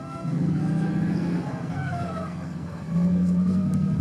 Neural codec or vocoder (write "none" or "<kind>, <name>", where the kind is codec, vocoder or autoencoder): codec, SNAC